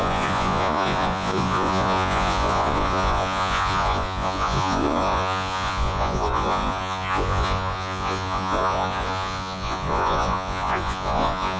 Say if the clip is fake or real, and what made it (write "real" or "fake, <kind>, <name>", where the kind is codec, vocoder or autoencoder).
fake, vocoder, Vocos